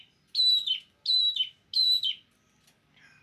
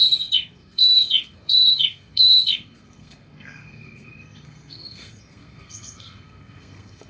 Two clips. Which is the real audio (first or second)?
first